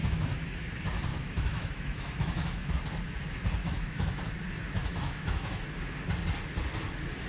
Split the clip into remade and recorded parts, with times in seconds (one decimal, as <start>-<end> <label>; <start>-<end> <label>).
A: 0.0-0.7 remade; 0.7-1.1 recorded; 1.1-2.7 remade; 2.7-3.6 recorded; 3.6-4.2 remade; 4.2-4.8 recorded; 4.8-5.6 remade; 5.6-7.3 recorded